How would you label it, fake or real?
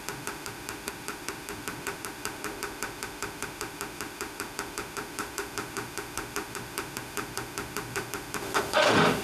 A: fake